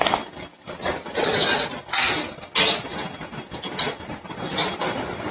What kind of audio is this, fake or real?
real